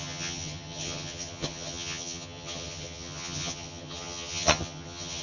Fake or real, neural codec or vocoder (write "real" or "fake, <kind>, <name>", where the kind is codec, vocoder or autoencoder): fake, vocoder, HiFi-GAN